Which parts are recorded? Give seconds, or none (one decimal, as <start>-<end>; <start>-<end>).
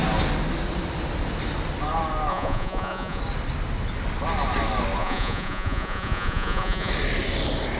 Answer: 0.0-2.3; 3.2-5.0; 6.9-7.8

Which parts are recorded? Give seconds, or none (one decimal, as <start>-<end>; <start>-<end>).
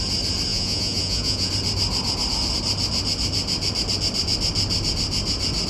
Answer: 0.0-0.5; 1.5-5.7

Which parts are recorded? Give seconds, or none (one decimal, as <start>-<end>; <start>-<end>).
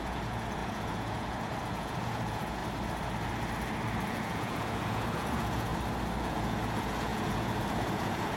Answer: 2.6-4.1; 5.7-6.2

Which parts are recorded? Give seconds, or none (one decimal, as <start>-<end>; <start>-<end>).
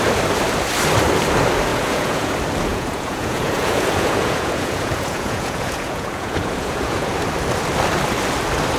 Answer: 0.0-1.7; 2.3-2.7; 7.1-8.8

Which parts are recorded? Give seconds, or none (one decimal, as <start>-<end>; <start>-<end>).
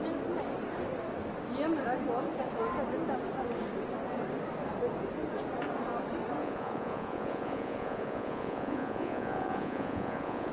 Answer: 0.0-6.4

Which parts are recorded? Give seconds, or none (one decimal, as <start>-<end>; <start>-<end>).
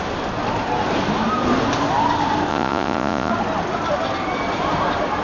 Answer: 0.0-2.5; 3.3-5.2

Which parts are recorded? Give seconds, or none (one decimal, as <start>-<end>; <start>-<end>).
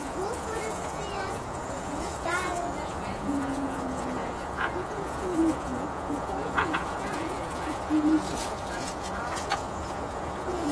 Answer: none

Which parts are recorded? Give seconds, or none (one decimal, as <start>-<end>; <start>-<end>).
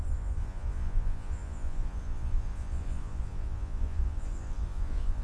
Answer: none